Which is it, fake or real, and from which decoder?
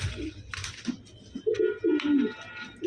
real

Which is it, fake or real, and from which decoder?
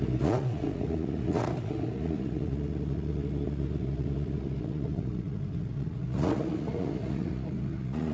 fake, vocoder, Vocos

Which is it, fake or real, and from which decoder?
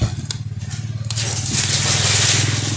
real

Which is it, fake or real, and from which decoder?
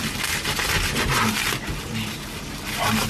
real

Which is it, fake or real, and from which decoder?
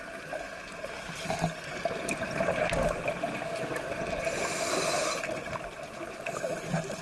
real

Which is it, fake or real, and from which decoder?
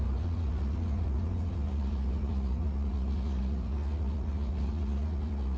fake, vocoder, Vocos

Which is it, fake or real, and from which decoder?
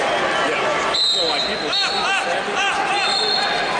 real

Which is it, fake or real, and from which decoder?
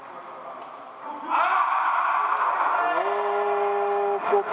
real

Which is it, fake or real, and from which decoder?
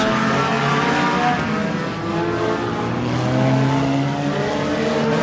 real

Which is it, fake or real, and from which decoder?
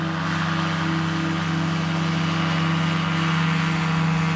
real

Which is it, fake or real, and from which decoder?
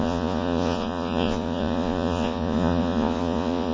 fake, vocoder, Vocos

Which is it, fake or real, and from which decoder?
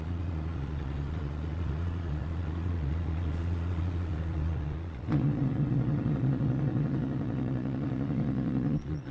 fake, vocoder, Vocos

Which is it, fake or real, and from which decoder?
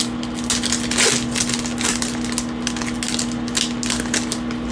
real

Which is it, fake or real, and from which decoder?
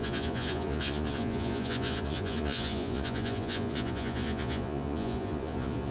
fake, vocoder, Vocos